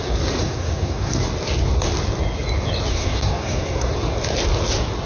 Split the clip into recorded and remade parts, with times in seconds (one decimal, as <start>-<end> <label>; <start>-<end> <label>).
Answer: 0.0-0.4 recorded; 0.4-1.2 remade; 1.2-2.9 recorded; 2.9-3.9 remade; 3.9-5.1 recorded